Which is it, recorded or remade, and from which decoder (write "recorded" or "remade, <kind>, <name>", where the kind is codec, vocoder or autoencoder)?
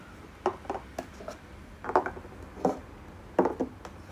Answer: recorded